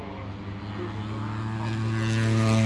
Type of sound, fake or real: real